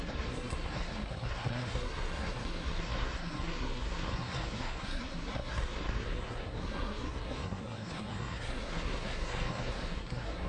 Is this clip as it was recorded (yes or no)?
no